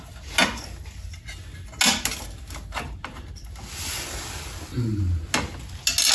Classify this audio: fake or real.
real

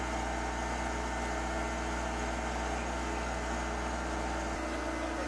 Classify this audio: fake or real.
real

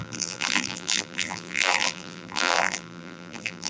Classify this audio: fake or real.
fake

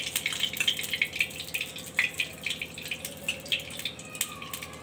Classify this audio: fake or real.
real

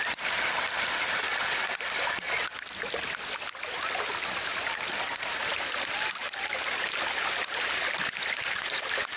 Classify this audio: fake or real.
fake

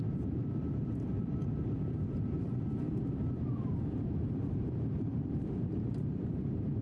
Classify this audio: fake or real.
fake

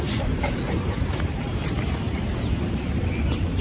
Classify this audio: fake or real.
fake